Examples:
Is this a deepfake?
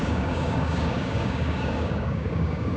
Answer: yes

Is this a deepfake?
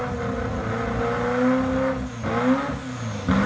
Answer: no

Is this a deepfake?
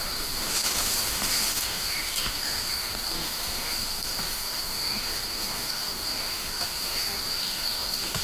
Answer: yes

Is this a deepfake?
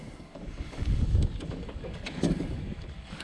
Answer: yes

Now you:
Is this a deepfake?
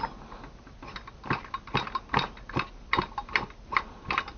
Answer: no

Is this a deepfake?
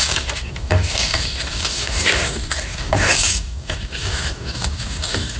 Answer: yes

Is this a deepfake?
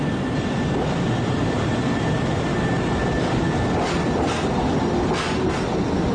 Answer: no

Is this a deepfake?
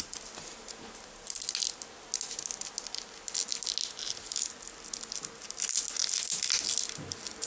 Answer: no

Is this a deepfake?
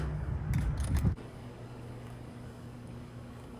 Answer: yes